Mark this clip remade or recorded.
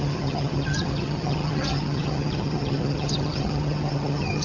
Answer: remade